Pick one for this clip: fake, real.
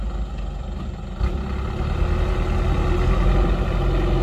real